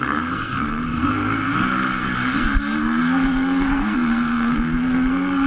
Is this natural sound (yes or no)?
no